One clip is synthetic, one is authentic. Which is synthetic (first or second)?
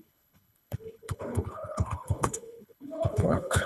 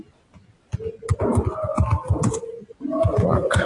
first